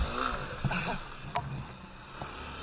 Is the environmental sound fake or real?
real